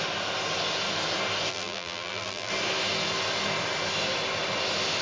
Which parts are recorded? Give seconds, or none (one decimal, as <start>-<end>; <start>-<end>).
0.0-1.5; 2.5-5.0